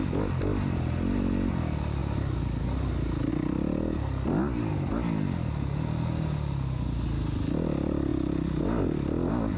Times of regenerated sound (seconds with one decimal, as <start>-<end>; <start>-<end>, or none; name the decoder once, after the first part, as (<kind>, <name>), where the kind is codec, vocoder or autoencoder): none